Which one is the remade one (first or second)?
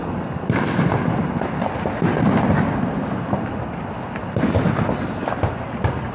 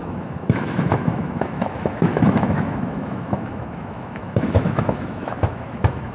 second